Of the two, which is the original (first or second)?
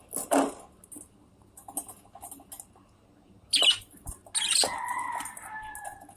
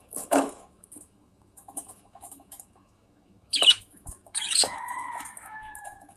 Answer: first